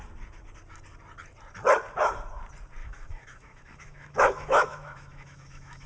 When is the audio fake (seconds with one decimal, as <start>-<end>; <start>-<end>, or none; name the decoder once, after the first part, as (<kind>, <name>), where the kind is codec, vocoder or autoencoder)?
2.8-5.9 (autoencoder, DAC-VAE)

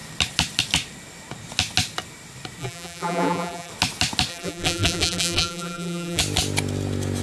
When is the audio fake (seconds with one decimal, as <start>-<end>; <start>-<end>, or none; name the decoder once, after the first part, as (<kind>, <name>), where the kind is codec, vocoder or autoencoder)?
2.6-3.7 (vocoder, BigVGAN v2); 4.3-6.2